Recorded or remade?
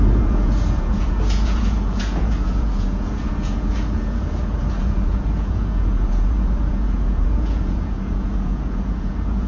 remade